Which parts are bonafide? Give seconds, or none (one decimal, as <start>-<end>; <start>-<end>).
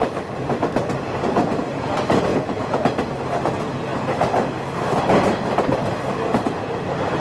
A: 0.0-2.3; 2.8-7.2